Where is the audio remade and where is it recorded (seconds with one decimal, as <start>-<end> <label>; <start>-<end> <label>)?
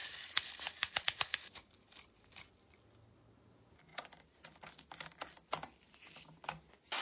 0.0-3.9 recorded; 3.9-4.6 remade; 4.6-7.0 recorded